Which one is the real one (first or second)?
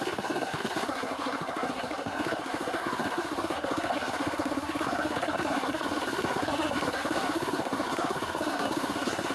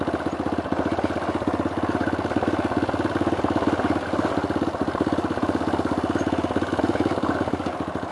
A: second